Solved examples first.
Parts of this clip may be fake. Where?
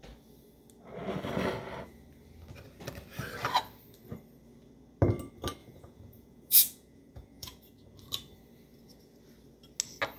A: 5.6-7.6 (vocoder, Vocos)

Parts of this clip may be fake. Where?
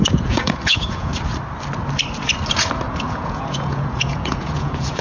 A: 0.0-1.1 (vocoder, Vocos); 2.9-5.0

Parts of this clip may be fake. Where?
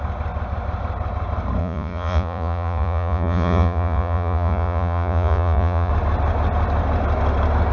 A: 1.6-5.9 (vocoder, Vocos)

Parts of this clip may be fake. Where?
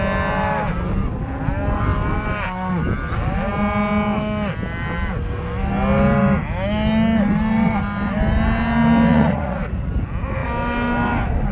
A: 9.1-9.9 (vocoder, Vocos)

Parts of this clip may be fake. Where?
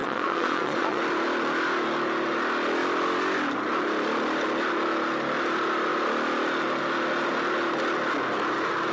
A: 0.0-1.0 (vocoder, Vocos)